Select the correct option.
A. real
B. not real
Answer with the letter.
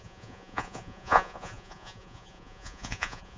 B